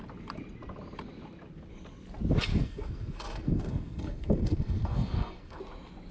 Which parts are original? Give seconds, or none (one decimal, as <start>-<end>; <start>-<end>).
0.0-2.5; 5.6-6.1